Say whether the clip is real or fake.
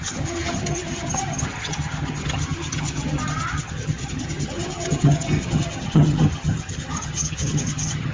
fake